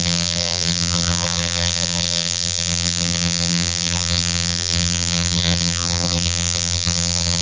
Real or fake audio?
fake